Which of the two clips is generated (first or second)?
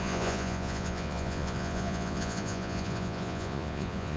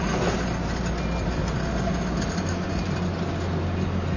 first